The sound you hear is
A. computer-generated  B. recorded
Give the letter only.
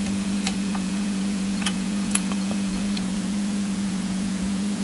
A